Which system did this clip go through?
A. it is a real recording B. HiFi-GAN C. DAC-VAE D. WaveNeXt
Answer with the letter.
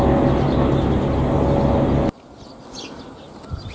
A